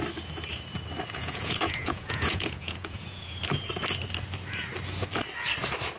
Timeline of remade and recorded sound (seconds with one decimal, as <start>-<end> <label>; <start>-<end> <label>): 0.0-1.2 recorded; 1.2-3.7 remade; 3.7-6.0 recorded